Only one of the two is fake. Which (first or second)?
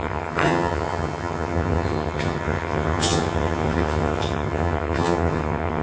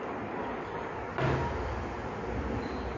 first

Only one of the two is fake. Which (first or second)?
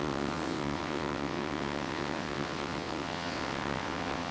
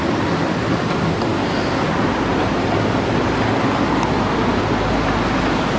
first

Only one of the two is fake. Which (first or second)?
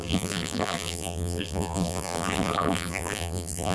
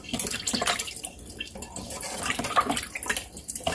first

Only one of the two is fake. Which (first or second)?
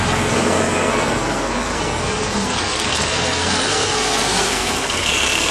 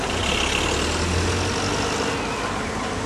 first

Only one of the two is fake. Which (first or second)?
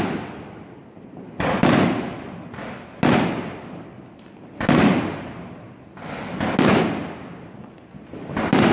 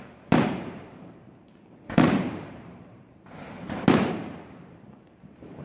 second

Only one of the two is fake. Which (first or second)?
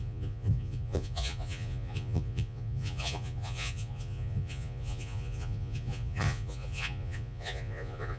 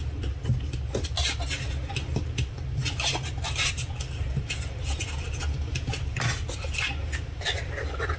first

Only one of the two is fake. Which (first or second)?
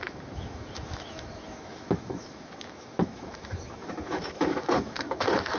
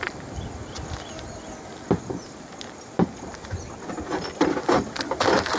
first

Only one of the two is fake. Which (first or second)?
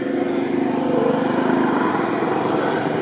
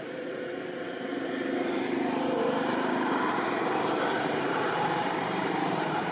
second